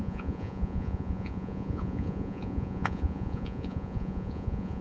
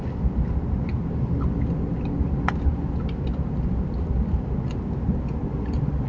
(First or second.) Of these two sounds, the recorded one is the second